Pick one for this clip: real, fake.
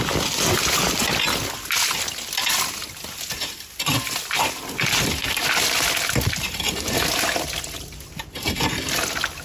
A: real